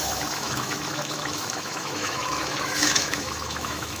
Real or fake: fake